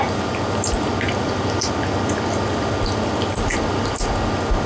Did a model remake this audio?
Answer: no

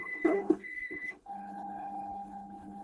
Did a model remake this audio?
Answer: yes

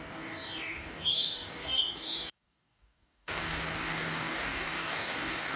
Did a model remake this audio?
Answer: yes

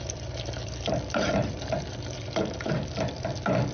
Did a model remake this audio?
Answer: yes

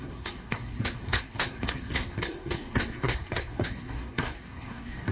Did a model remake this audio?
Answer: yes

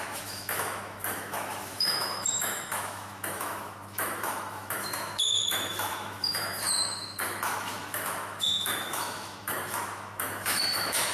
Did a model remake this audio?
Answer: yes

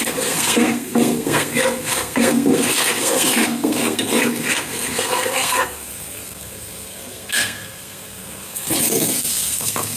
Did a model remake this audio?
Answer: yes